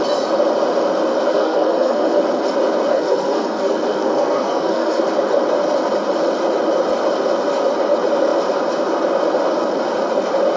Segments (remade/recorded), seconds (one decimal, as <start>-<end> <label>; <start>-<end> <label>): 0.0-1.3 recorded; 1.3-2.2 remade; 2.2-2.9 recorded; 2.9-5.0 remade; 5.0-10.6 recorded